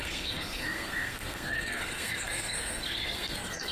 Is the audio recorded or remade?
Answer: remade